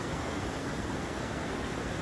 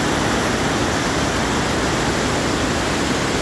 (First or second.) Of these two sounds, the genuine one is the second